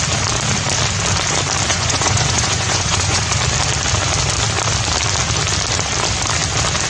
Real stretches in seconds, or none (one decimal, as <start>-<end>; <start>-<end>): 0.0-1.7; 3.3-6.9